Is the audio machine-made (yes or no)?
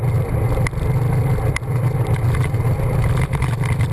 no